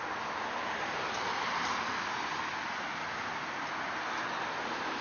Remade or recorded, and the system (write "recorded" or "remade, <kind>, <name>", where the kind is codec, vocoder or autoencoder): recorded